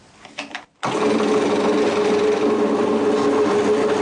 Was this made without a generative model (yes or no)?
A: yes